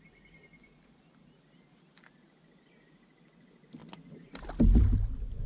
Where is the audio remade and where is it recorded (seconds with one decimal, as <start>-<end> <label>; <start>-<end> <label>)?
0.0-3.8 recorded; 3.8-4.5 remade; 4.5-5.5 recorded